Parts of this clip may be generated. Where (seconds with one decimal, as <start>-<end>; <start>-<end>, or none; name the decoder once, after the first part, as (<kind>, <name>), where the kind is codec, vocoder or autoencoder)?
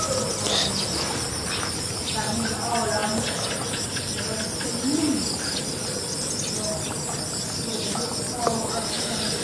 none